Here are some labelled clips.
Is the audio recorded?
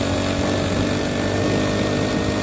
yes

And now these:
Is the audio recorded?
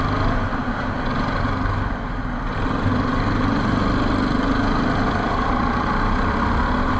yes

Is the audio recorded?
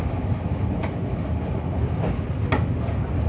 yes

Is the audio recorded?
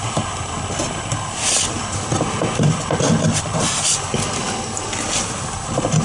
yes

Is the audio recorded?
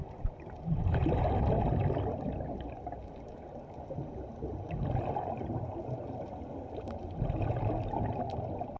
yes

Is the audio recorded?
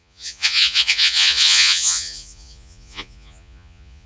no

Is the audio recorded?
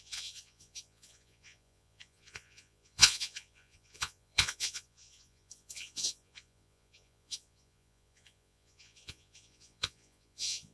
no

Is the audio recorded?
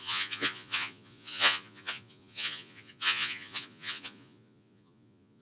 no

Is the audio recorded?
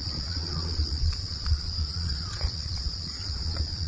no